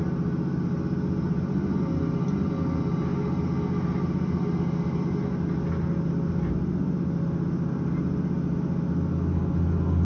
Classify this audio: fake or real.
real